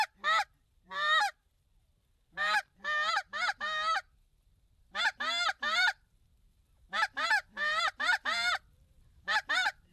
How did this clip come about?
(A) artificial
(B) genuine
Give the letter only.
A